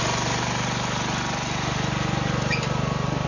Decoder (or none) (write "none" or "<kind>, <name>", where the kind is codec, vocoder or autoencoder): none